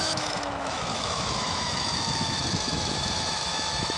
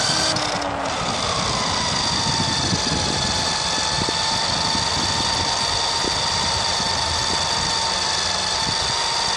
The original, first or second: second